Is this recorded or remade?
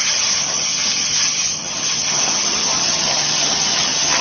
remade